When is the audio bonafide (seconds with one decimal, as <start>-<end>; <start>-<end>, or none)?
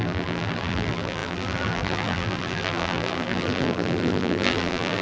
none